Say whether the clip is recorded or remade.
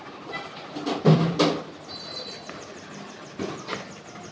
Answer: recorded